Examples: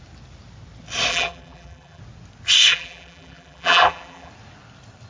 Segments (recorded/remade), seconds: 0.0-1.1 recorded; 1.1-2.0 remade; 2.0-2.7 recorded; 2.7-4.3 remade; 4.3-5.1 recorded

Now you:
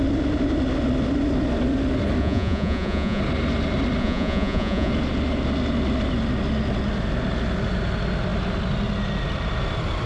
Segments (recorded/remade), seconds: 0.0-2.2 recorded; 2.2-3.2 remade; 3.2-4.0 recorded; 4.0-4.9 remade; 4.9-10.1 recorded

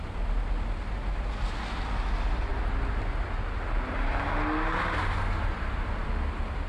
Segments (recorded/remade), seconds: 0.0-6.7 recorded